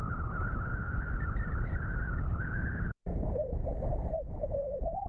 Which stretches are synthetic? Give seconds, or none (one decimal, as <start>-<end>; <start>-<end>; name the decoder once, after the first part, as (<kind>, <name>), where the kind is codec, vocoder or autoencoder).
3.4-4.2 (vocoder, BigVGAN v2)